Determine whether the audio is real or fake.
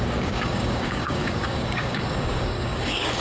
fake